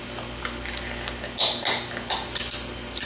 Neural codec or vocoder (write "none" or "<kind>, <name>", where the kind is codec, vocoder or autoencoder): none